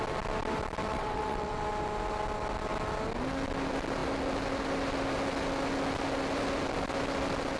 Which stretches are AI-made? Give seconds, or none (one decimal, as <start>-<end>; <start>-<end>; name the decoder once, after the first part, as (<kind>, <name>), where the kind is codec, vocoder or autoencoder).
0.9-1.6 (vocoder, WaveNeXt)